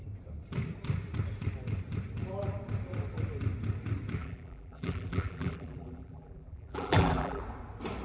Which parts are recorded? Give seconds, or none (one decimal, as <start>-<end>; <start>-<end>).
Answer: 0.0-4.2; 7.4-8.0